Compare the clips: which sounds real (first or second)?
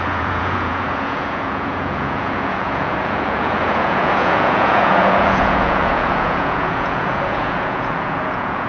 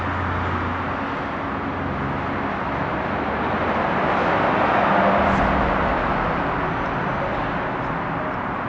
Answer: second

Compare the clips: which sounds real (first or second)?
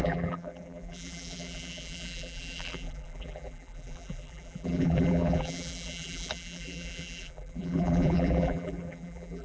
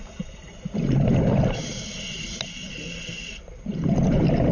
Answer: second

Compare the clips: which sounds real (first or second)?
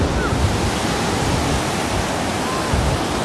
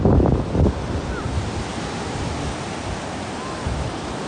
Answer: first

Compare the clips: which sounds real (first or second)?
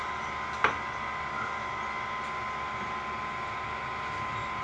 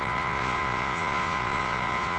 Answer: first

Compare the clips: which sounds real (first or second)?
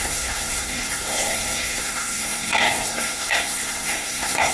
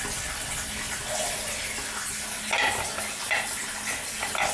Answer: second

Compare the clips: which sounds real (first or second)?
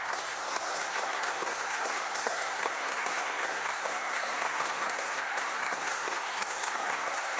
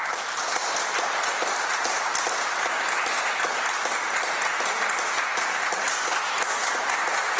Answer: second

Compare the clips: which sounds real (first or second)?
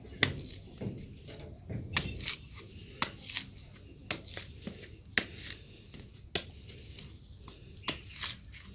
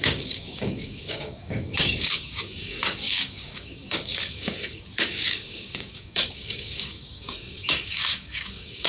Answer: first